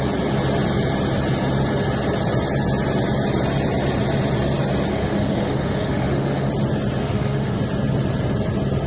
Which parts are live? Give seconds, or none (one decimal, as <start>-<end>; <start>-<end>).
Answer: 0.0-4.9; 6.5-7.0; 7.6-8.9